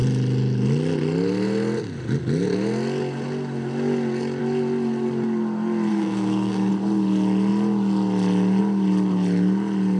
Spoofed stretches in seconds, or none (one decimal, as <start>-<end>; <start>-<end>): 5.9-6.7